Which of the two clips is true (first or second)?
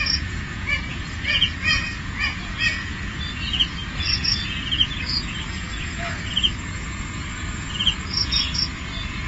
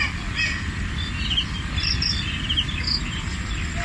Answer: second